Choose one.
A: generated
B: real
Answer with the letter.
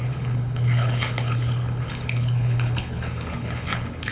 A